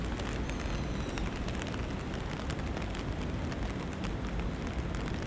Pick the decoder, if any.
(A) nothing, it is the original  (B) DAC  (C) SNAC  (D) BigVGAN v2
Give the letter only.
A